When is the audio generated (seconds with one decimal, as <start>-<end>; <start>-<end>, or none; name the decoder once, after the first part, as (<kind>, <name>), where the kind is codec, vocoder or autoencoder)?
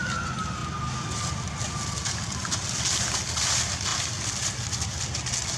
none